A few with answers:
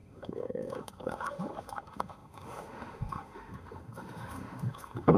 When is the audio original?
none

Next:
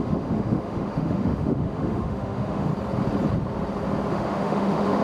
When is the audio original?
2.7-4.1

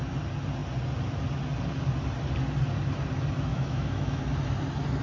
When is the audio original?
0.0-3.5; 4.2-5.0

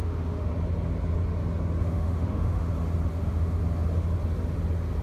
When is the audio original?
0.5-1.9; 2.7-3.1; 3.6-5.0

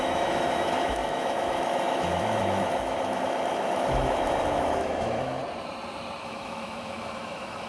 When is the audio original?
5.4-6.2

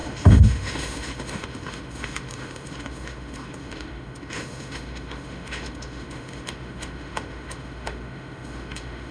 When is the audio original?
none

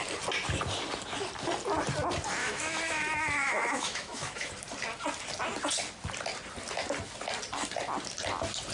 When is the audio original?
0.0-2.4; 4.5-8.7